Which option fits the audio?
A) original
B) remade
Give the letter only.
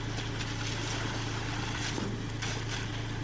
A